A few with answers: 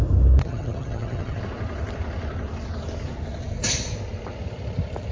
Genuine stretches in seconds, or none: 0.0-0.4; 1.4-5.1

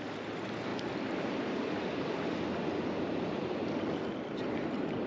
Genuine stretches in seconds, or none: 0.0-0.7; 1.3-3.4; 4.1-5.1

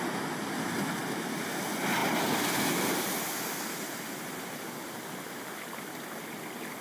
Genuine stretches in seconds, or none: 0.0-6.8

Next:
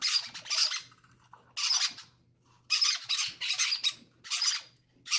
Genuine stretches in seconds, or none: 0.0-5.2

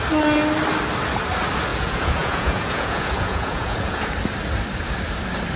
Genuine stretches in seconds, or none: 0.0-1.7; 4.1-5.6